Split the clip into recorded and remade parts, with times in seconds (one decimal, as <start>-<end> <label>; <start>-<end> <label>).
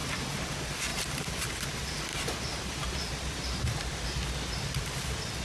0.0-0.9 recorded; 0.9-1.7 remade; 1.7-5.4 recorded